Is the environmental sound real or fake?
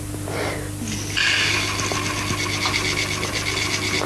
real